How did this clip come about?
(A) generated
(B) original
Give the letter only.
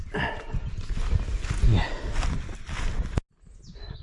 B